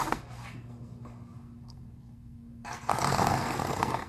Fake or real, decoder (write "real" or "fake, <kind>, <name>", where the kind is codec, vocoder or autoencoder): fake, codec, SNAC